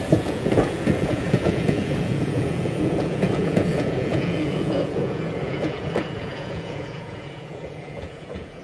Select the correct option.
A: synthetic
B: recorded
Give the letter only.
A